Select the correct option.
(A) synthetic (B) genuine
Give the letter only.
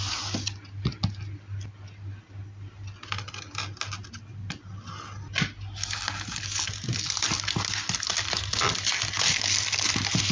B